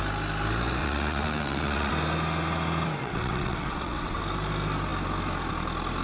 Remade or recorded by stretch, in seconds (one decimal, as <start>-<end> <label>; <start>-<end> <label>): 0.0-0.8 recorded; 0.8-1.9 remade; 1.9-3.0 recorded; 3.0-4.2 remade; 4.2-6.0 recorded